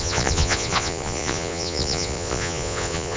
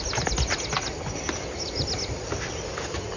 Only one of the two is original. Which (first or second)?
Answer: second